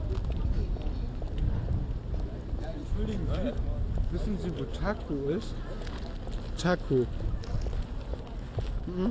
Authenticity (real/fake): real